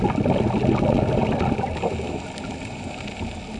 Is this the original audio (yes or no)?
yes